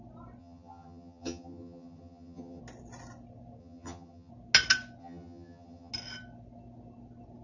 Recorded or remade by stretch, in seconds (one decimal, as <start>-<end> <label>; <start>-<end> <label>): 0.0-0.4 recorded; 0.4-2.6 remade; 2.6-3.6 recorded; 3.6-4.3 remade; 4.3-5.0 recorded; 5.0-5.9 remade; 5.9-7.4 recorded